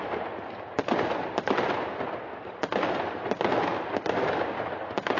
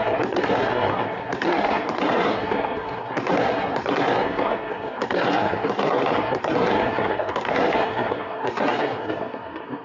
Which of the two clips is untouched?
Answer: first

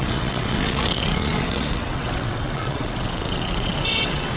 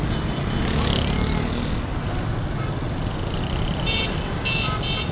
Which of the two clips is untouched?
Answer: second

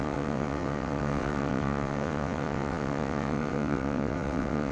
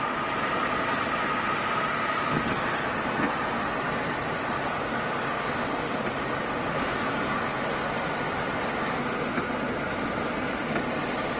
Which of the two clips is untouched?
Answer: second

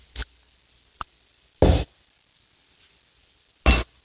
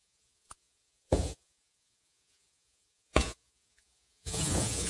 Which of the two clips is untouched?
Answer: first